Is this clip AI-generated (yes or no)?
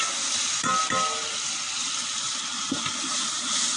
no